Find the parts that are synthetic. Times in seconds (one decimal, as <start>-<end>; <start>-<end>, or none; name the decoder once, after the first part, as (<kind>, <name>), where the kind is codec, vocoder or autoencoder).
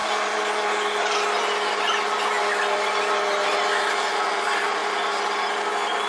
0.0-2.4 (vocoder, BigVGAN v2)